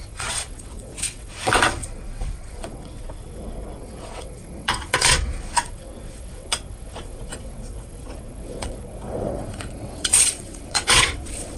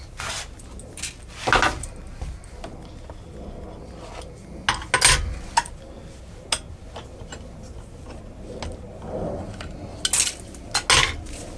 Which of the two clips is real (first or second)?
second